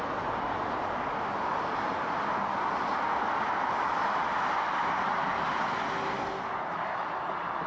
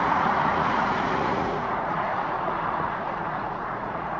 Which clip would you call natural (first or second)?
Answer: first